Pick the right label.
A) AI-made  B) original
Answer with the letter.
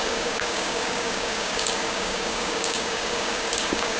A